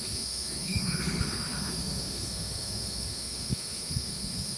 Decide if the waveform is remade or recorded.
remade